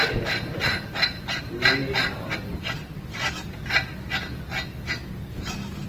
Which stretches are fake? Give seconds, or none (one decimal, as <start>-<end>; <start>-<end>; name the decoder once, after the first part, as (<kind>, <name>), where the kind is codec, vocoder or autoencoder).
none